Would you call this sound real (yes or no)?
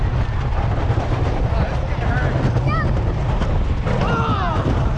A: yes